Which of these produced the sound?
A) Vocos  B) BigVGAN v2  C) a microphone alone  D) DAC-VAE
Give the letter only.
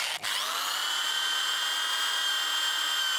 C